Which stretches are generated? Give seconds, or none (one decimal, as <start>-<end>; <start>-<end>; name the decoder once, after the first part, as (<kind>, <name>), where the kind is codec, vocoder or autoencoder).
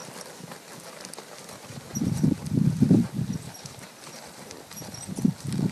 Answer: 1.9-5.3 (vocoder, BigVGAN v2)